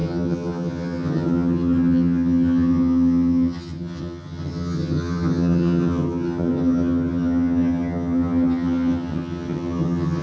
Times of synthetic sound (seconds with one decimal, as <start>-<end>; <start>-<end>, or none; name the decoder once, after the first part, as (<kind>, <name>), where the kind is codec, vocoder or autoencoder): 0.0-10.2 (vocoder, HiFi-GAN)